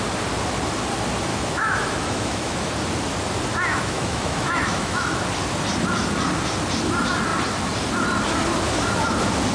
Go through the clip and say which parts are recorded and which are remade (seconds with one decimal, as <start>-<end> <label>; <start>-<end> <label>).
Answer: 0.0-1.3 recorded; 1.3-2.7 remade; 2.7-3.7 recorded; 3.7-5.2 remade; 5.2-9.5 recorded